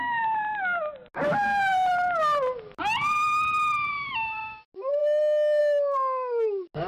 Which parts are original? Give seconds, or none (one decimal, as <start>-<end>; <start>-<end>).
0.0-6.9